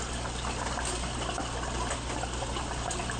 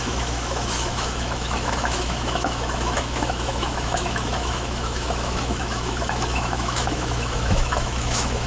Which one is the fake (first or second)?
second